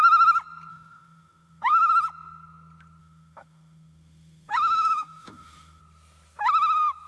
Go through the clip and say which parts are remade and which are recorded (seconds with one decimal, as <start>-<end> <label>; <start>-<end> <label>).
0.0-0.7 recorded; 0.7-1.9 remade; 1.9-3.0 recorded; 3.0-5.8 remade; 5.8-7.1 recorded

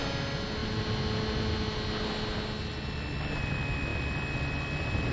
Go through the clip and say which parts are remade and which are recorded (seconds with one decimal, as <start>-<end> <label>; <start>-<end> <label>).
0.0-5.1 recorded

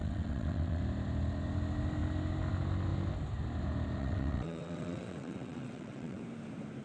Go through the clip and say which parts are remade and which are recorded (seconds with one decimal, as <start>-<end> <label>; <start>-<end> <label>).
0.0-0.8 remade; 0.8-4.0 recorded; 4.0-6.2 remade; 6.2-6.8 recorded

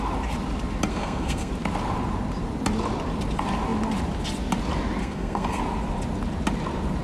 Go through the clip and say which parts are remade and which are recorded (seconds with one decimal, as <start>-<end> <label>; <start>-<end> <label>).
0.0-0.9 recorded; 0.9-1.5 remade; 1.5-5.0 recorded; 5.0-5.6 remade; 5.6-7.0 recorded

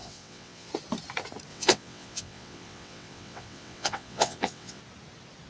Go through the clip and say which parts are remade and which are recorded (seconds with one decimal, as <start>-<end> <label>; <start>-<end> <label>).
0.0-0.7 remade; 0.7-1.5 recorded; 1.5-4.8 remade; 4.8-5.5 recorded